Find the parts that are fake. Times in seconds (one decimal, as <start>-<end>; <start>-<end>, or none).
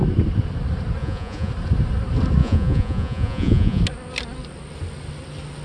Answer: 1.0-1.5; 2.4-3.8